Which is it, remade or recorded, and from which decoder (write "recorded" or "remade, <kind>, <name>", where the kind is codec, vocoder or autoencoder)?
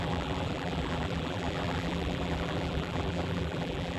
remade, vocoder, BigVGAN v2